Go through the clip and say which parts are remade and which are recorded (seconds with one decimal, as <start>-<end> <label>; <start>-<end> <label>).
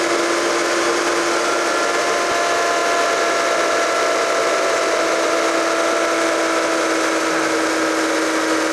0.0-8.7 recorded